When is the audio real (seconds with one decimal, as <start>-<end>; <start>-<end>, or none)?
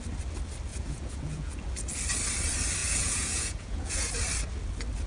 0.0-0.7; 1.5-2.8; 4.1-5.1